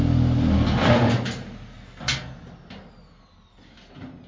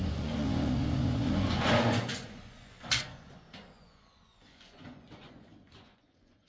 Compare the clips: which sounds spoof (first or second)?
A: second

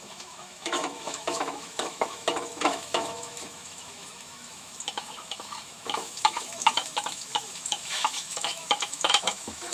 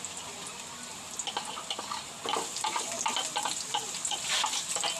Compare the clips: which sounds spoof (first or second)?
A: first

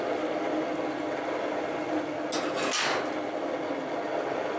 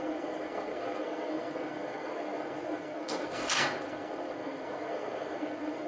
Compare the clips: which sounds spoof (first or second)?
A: second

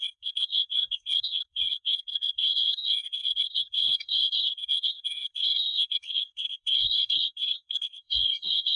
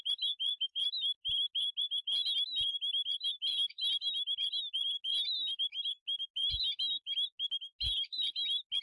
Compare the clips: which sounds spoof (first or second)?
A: first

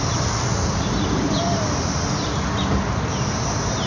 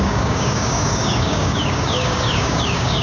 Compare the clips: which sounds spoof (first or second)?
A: second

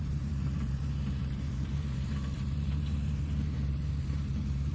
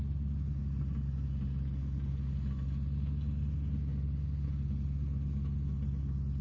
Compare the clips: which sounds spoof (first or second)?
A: first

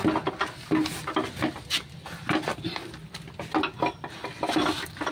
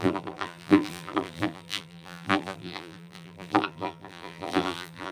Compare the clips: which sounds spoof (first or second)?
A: second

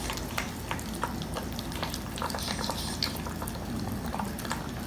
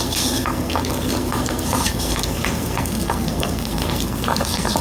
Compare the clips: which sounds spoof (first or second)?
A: second